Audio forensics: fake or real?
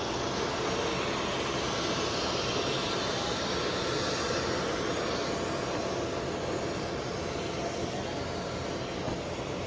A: real